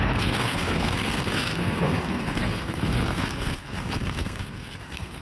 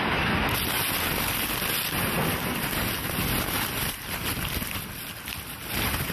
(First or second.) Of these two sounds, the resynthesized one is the first